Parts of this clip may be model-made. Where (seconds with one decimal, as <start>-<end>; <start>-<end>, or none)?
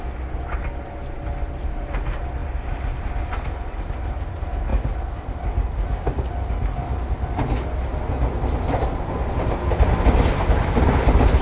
none